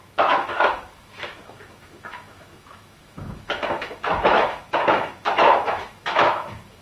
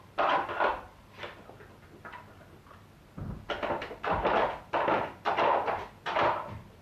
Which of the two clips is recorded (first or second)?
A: second